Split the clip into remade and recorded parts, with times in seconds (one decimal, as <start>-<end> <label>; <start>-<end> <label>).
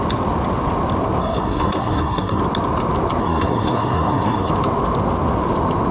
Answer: 0.0-1.2 recorded; 1.2-2.4 remade; 2.4-3.2 recorded; 3.2-4.5 remade; 4.5-5.9 recorded